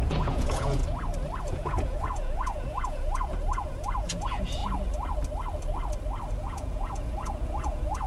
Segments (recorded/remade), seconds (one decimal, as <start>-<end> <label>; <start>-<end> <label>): 0.0-0.8 remade; 0.8-1.4 recorded; 1.4-4.6 remade; 4.6-6.3 recorded; 6.3-8.1 remade